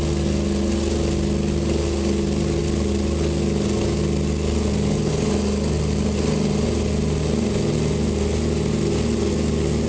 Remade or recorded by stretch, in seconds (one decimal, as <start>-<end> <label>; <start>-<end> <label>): 0.0-9.9 recorded